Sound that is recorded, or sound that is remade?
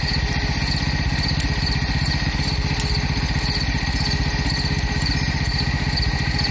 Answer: recorded